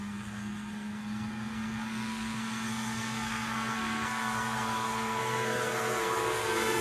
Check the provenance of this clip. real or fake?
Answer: fake